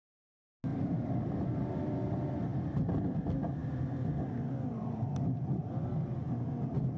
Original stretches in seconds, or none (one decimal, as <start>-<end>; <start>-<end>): 0.0-0.7; 1.6-2.5; 3.2-7.0